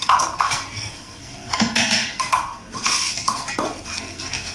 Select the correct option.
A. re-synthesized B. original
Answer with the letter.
A